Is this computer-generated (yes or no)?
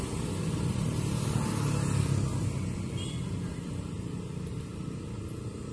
no